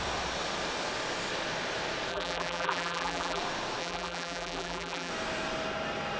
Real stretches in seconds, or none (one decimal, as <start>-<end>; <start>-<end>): 0.0-2.1; 3.4-3.8; 5.1-6.2